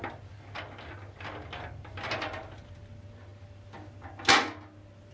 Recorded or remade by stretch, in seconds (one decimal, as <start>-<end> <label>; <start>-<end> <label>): 0.0-5.1 recorded